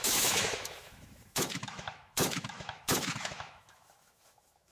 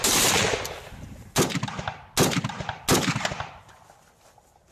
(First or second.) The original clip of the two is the second